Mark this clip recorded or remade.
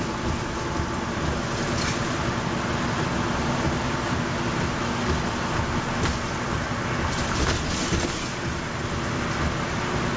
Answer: recorded